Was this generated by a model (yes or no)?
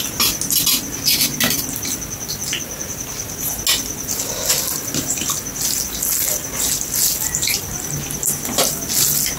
no